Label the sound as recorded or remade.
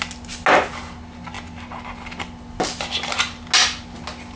recorded